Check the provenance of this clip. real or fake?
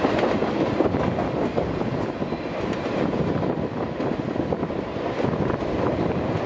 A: real